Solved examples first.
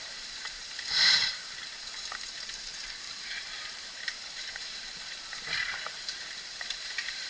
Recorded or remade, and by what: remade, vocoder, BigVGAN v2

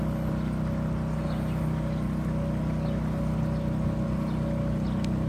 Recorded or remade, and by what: recorded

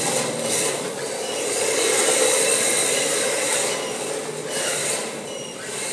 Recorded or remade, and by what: recorded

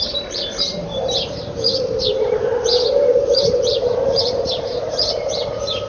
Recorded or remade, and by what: remade, vocoder, BigVGAN v2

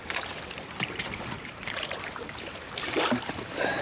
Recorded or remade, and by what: remade, vocoder, BigVGAN v2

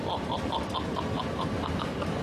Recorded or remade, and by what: recorded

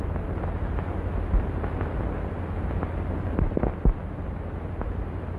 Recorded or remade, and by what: recorded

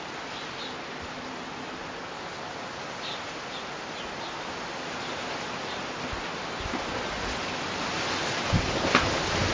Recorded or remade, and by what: recorded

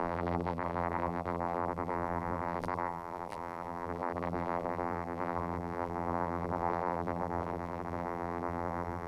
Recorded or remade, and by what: remade, vocoder, BigVGAN v2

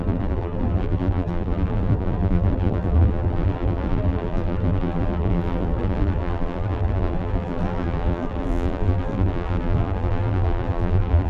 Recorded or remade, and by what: remade, vocoder, BigVGAN v2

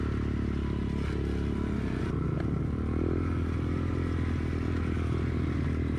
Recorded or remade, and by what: recorded